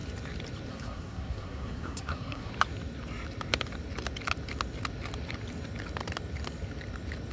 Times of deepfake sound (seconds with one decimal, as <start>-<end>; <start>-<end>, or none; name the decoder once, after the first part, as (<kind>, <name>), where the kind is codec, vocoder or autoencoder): 0.7-2.5 (codec, SNAC)